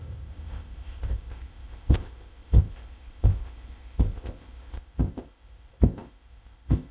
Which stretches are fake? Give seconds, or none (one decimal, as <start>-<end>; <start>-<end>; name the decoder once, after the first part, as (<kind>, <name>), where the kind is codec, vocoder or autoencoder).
0.0-6.9 (codec, ZipCodec)